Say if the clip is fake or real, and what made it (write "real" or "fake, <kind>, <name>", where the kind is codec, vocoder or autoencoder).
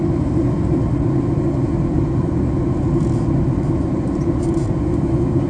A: real